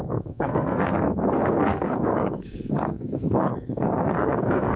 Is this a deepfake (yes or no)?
yes